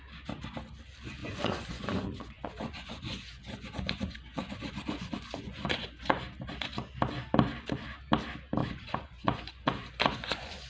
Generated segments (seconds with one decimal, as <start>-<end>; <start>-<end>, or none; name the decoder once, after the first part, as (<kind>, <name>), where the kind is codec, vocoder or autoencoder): 1.2-6.2 (vocoder, Vocos); 8.6-10.7